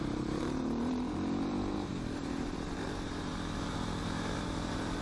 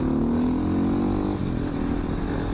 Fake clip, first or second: first